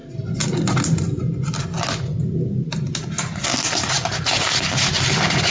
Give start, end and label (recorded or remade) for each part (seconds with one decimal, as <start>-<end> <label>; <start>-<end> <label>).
0.0-5.5 recorded

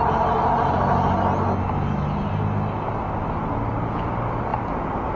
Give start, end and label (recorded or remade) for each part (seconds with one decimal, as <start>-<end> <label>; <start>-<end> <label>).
0.0-5.2 recorded

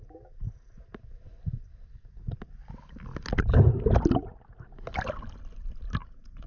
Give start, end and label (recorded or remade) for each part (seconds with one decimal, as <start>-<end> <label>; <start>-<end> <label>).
0.0-6.0 recorded; 6.0-6.5 remade

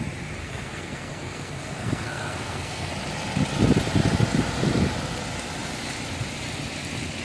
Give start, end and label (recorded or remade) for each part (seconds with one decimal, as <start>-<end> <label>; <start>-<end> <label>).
0.0-0.4 recorded; 0.4-2.9 remade; 2.9-7.2 recorded

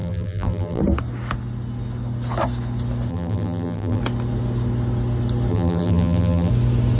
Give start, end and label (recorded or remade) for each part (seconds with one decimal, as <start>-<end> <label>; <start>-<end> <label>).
0.0-0.8 remade; 0.8-3.1 recorded; 3.1-4.0 remade; 4.0-5.5 recorded; 5.5-6.5 remade; 6.5-7.0 recorded

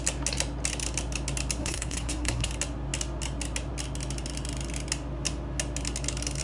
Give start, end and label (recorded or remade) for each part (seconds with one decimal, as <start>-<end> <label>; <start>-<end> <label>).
0.0-1.6 recorded; 1.6-2.5 remade; 2.5-6.4 recorded